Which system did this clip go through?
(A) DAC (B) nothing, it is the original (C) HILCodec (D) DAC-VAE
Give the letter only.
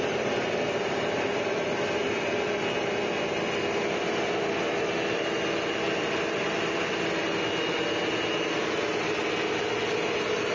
B